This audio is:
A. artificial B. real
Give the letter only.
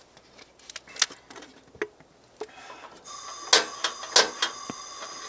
B